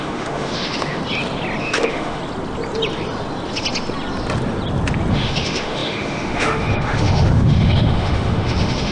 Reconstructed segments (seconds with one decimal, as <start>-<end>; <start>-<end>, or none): 0.0-1.0; 1.6-2.2; 5.1-8.9